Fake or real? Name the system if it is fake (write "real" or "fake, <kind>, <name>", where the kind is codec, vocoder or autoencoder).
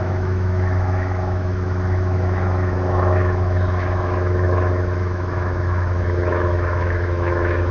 fake, autoencoder, DAC-VAE